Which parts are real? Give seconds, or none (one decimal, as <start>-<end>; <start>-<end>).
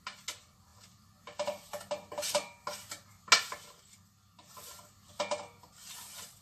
0.0-6.4